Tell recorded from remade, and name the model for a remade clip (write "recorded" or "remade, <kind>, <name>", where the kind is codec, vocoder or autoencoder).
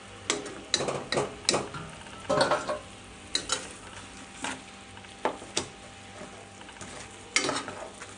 recorded